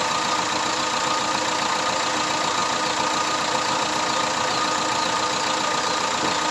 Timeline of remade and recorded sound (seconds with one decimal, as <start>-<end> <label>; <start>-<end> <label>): 0.0-6.5 recorded